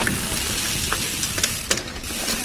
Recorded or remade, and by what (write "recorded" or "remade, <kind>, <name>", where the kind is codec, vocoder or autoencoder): recorded